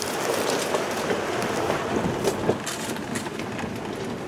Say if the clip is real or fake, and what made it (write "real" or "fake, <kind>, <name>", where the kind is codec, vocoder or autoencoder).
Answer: real